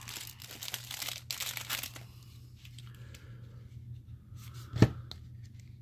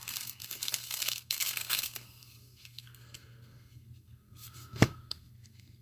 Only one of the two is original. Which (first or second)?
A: first